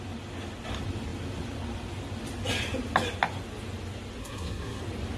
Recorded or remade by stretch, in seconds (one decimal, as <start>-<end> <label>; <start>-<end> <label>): 0.0-4.2 recorded; 4.2-4.8 remade; 4.8-5.2 recorded